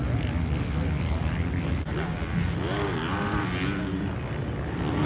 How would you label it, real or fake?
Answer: real